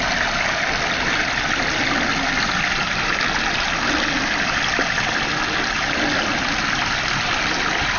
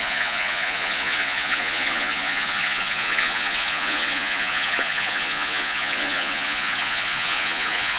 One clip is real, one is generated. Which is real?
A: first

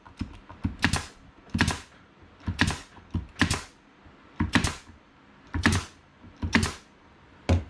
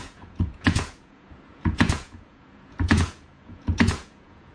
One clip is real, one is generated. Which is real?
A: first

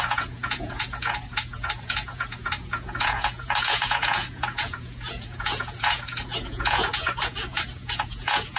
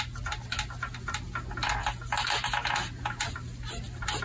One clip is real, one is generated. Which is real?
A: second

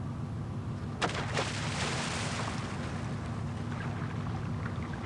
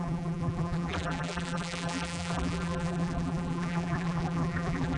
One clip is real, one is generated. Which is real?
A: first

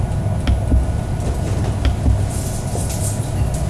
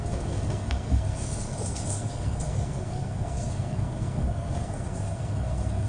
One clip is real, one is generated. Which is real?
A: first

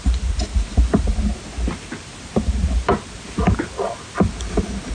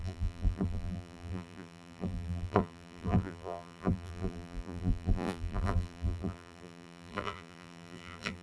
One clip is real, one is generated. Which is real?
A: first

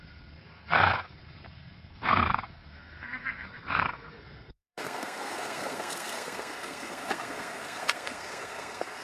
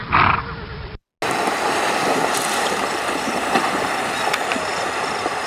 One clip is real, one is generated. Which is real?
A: second